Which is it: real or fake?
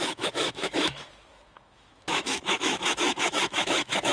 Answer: fake